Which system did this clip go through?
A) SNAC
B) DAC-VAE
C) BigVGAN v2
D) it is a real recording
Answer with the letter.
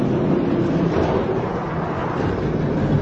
D